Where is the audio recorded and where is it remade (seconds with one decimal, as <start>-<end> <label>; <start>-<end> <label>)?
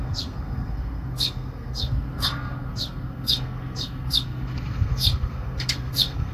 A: 0.0-6.3 remade